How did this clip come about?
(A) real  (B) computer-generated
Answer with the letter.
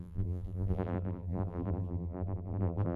B